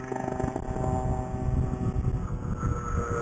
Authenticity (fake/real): real